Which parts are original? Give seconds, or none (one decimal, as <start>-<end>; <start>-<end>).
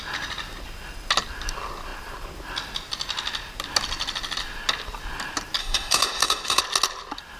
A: 0.0-5.6; 6.6-7.4